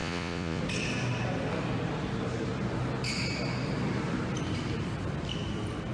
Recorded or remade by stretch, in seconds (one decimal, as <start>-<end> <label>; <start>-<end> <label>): 0.0-0.6 remade; 0.6-5.9 recorded

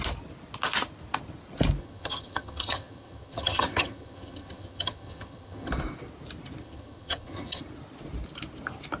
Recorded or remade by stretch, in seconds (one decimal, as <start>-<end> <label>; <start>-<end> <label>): 0.0-1.8 recorded; 1.8-5.7 remade; 5.7-6.6 recorded; 6.6-7.6 remade; 7.6-9.0 recorded

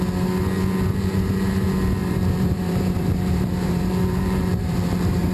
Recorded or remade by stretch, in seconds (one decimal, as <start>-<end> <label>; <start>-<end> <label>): 0.0-2.0 recorded; 2.0-5.3 remade

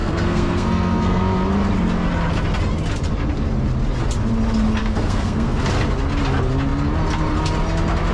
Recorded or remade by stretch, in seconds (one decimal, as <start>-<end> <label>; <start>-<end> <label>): 0.0-1.2 remade; 1.2-4.8 recorded; 4.8-5.6 remade; 5.6-8.1 recorded

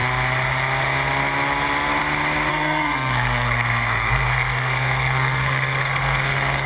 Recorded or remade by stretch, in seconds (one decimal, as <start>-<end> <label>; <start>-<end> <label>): 0.0-2.5 recorded; 2.5-6.7 remade

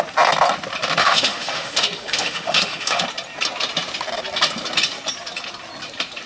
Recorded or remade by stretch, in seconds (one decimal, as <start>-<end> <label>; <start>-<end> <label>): 0.0-1.0 recorded; 1.0-3.0 remade; 3.0-6.3 recorded